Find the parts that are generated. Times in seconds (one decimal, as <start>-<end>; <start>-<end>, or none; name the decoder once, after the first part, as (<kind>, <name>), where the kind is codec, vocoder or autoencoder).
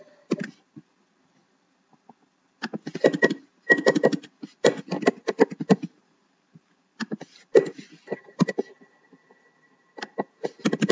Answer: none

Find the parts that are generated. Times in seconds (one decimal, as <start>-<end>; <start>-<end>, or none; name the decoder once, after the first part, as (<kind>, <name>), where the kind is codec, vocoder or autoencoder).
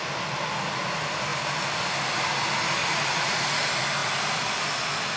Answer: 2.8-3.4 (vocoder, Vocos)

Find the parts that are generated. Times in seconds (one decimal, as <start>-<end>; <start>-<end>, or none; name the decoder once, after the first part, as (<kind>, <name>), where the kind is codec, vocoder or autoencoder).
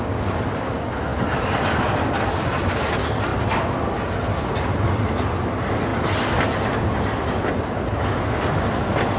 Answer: none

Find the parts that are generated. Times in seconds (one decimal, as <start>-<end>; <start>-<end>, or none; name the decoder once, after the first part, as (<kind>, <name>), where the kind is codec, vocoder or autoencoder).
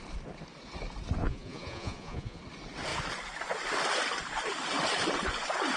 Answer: 1.2-2.4 (vocoder, Vocos)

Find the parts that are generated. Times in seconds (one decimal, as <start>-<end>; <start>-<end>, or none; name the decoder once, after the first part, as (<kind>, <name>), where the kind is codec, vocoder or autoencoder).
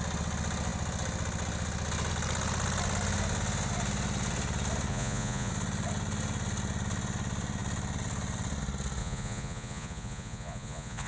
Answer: 4.9-5.5 (vocoder, Vocos); 9.0-11.1